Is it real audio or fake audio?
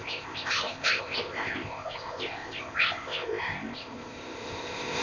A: fake